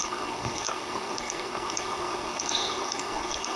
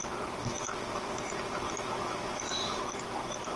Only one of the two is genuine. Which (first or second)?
second